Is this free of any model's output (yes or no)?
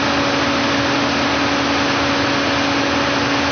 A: yes